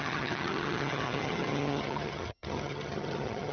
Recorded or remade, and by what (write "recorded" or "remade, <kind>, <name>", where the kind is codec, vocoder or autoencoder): remade, vocoder, HiFi-GAN